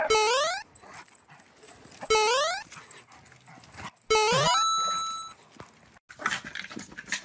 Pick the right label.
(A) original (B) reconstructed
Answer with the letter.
A